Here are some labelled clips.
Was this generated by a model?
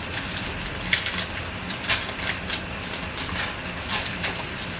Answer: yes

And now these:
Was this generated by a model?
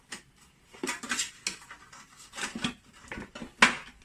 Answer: no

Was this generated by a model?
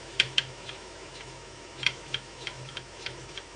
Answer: yes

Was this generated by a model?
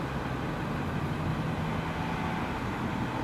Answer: no